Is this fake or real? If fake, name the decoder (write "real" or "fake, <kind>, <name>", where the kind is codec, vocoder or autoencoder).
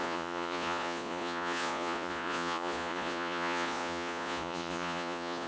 fake, vocoder, Vocos